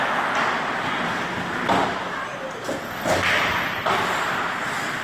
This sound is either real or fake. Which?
real